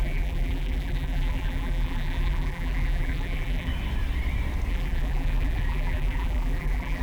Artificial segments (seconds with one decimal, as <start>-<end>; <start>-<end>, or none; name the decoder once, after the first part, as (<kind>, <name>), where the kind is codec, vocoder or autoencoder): 0.0-3.7 (vocoder, BigVGAN v2); 4.7-7.0